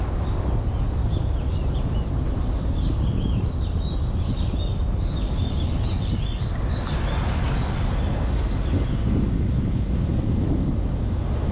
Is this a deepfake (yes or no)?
no